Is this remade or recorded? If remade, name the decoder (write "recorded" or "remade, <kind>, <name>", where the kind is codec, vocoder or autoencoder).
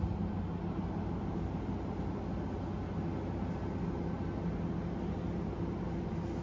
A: recorded